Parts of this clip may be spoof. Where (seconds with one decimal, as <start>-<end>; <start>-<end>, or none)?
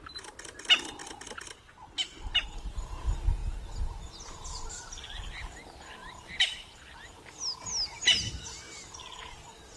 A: 1.0-1.7; 6.0-7.7